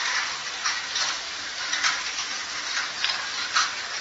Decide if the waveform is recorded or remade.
recorded